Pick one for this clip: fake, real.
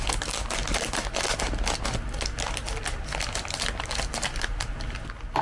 real